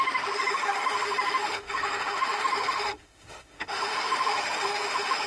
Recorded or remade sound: remade